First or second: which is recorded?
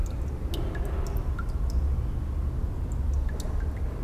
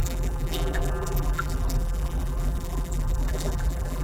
first